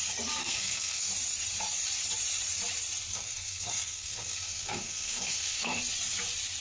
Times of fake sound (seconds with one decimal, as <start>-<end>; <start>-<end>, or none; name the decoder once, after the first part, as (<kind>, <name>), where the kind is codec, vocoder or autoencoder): 0.4-1.1 (codec, SNAC); 3.1-5.8